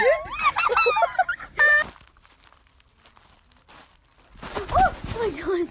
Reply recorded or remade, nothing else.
recorded